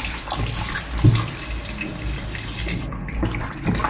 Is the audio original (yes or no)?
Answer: yes